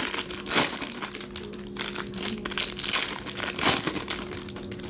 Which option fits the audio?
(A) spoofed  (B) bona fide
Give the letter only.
B